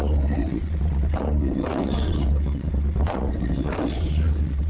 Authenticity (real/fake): fake